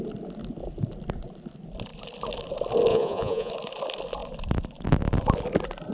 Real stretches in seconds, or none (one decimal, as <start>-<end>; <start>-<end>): 0.0-2.9; 3.5-5.9

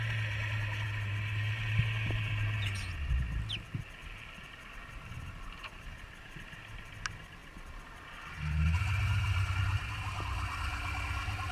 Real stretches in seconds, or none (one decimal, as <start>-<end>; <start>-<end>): 0.0-11.5

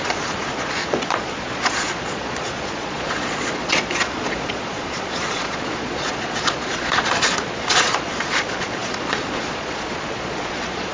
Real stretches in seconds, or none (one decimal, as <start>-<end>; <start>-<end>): none

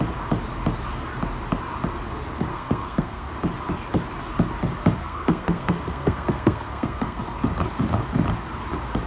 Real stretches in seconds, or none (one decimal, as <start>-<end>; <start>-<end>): 0.0-2.5; 3.3-5.0; 7.2-9.1

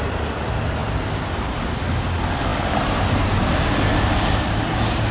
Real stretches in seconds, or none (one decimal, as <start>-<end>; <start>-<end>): 0.0-5.1

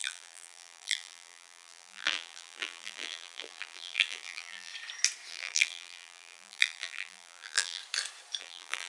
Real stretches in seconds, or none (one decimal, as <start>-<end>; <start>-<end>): 4.7-5.3; 7.8-8.4

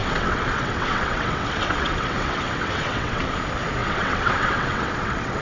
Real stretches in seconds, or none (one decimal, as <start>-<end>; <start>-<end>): 3.2-3.8